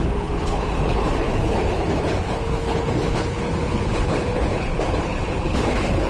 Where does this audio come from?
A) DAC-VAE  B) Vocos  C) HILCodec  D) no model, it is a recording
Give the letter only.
C